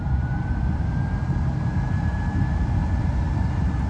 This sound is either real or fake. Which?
fake